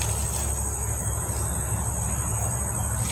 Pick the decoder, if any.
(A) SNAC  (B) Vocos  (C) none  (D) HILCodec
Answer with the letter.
C